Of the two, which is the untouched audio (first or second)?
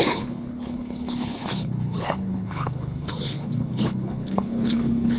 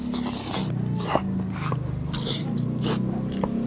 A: second